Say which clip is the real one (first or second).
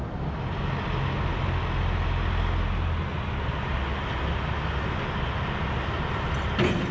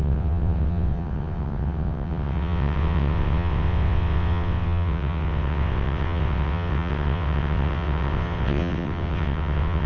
first